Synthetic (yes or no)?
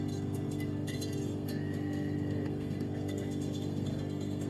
yes